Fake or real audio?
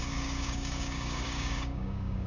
fake